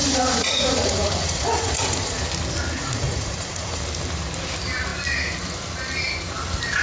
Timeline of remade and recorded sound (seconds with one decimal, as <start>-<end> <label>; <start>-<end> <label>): 0.0-2.2 remade; 2.2-2.8 recorded; 2.8-3.8 remade; 3.8-6.8 recorded